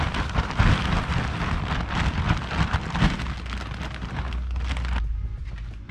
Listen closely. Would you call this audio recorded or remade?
recorded